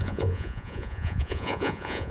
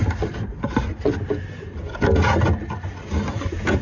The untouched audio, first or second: second